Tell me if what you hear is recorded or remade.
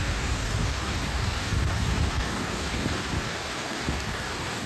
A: remade